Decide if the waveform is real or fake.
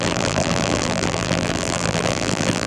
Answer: fake